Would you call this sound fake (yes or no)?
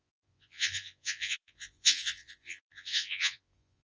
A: yes